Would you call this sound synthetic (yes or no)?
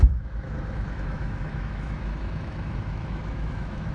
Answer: yes